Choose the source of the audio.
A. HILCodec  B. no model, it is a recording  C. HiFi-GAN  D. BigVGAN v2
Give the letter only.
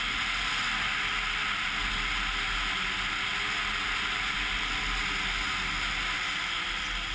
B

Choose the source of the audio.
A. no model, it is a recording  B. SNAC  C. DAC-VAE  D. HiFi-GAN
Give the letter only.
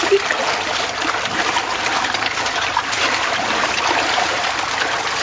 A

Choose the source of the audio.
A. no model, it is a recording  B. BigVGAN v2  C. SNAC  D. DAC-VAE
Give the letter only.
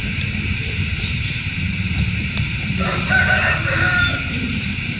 B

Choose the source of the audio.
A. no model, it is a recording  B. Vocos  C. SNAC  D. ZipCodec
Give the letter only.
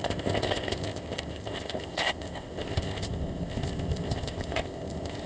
D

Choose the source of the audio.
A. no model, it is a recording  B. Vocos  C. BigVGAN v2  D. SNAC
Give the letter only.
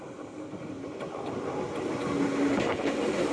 A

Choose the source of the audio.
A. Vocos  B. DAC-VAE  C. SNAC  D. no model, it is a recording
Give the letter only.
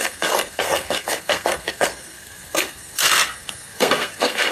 C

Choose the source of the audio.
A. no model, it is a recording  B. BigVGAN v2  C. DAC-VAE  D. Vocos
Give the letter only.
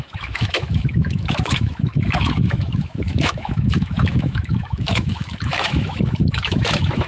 C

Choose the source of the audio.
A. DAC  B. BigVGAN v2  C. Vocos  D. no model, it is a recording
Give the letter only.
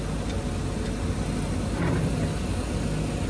D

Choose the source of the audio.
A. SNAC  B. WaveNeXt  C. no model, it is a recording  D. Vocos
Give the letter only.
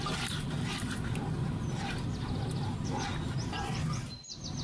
C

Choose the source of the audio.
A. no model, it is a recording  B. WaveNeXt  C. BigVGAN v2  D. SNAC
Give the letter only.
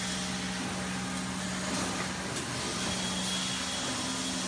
A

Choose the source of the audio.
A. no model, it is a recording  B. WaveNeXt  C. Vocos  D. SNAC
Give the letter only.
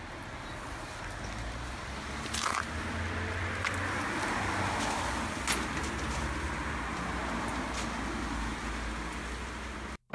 A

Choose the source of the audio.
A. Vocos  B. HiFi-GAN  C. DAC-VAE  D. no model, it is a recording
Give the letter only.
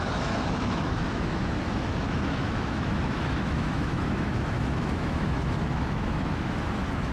C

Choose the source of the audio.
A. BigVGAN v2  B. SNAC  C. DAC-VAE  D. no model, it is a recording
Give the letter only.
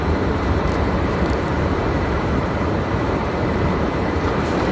A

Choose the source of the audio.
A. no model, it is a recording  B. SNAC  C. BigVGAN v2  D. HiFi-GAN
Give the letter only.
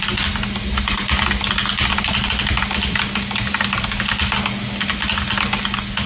A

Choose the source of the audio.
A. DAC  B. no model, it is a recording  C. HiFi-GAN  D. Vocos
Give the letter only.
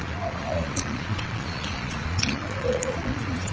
D